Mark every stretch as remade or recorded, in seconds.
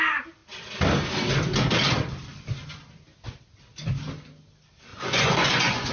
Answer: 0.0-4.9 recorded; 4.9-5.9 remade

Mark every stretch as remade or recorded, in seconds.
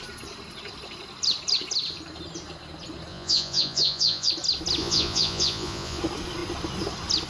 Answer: 0.0-3.1 recorded; 3.1-4.3 remade; 4.3-4.8 recorded; 4.8-6.0 remade; 6.0-7.3 recorded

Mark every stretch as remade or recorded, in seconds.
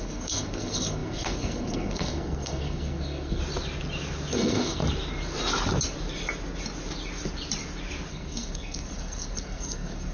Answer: 0.0-3.4 remade; 3.4-4.3 recorded; 4.3-4.8 remade; 4.8-8.1 recorded; 8.1-10.1 remade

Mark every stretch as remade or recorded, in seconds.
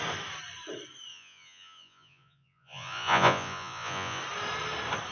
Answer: 0.0-1.1 recorded; 1.1-4.2 remade; 4.2-5.1 recorded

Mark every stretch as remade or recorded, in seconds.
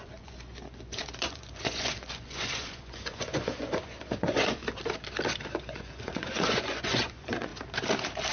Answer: 0.0-4.6 remade; 4.6-5.6 recorded; 5.6-7.5 remade; 7.5-8.3 recorded